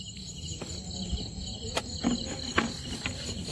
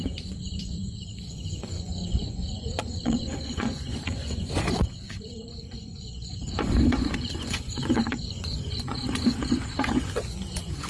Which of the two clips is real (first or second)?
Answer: first